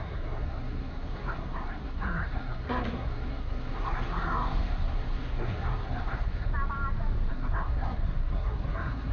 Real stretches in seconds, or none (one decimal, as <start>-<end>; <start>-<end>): 6.5-7.3